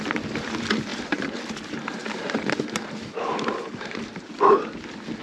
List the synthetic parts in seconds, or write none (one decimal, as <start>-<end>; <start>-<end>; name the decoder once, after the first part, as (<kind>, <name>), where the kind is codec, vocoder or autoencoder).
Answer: 0.9-1.4 (vocoder, BigVGAN v2); 2.0-4.3